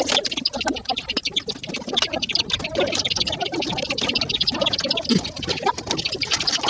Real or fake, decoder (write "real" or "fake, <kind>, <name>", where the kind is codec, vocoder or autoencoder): real